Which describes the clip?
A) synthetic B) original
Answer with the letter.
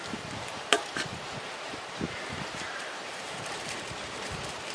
A